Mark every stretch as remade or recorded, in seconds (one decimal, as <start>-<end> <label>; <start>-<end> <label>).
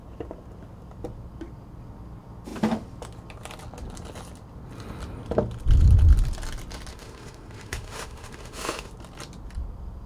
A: 0.0-6.9 recorded; 6.9-8.9 remade; 8.9-10.1 recorded